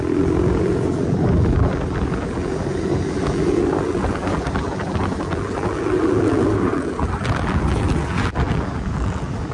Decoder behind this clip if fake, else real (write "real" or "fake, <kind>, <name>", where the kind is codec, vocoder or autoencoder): fake, vocoder, BigVGAN v2